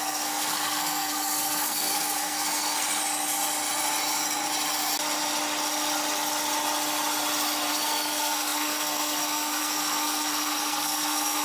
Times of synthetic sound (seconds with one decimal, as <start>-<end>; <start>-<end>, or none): 0.0-3.0; 7.7-11.4